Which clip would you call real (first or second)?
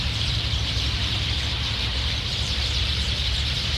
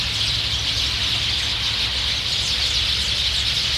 second